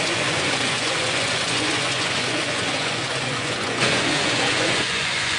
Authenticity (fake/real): fake